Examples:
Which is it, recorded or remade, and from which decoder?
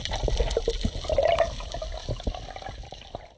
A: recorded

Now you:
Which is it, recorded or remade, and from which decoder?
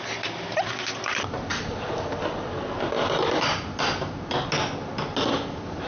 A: recorded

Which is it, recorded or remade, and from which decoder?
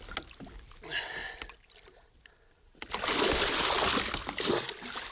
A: recorded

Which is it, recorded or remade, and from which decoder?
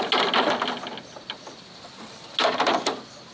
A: recorded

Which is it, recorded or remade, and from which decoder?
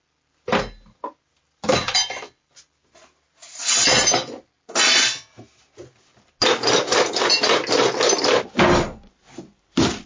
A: recorded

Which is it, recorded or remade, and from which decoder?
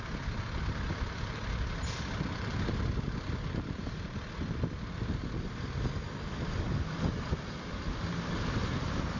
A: recorded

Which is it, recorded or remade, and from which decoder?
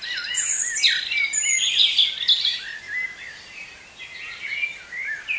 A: recorded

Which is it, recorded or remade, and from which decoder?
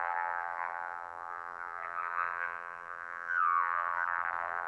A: remade, vocoder, BigVGAN v2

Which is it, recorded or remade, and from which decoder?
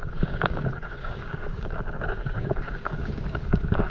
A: remade, codec, DAC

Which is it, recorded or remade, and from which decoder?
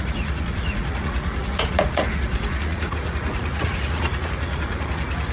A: remade, vocoder, Vocos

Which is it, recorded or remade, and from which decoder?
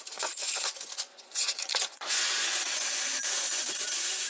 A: remade, vocoder, Vocos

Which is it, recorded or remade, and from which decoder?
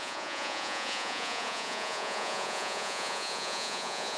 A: remade, vocoder, Vocos